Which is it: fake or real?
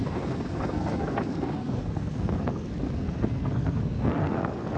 fake